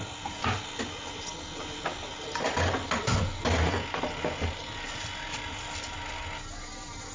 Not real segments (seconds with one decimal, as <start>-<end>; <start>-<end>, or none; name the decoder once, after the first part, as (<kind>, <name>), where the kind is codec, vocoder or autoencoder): none